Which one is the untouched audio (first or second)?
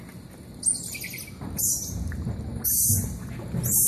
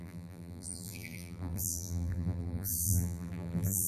first